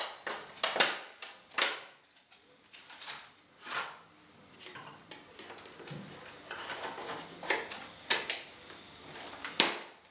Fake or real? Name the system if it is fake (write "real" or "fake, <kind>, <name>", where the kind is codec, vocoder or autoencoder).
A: real